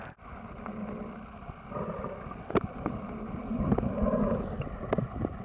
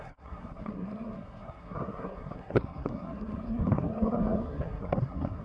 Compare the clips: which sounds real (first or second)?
first